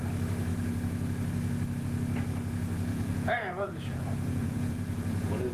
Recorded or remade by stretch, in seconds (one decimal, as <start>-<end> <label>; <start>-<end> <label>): 0.0-2.9 recorded; 2.9-5.5 remade